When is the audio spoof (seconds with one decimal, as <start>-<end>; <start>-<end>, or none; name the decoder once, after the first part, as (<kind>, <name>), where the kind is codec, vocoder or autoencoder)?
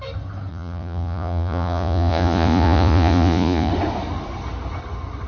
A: 0.5-3.7 (vocoder, Vocos)